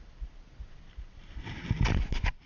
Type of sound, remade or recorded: recorded